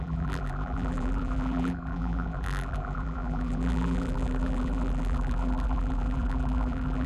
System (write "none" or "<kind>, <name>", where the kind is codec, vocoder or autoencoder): vocoder, BigVGAN v2